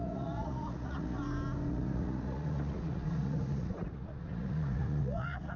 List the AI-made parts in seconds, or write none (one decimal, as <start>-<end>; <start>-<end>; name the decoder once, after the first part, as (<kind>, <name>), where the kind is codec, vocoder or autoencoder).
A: 0.0-1.2 (vocoder, Vocos); 1.7-5.6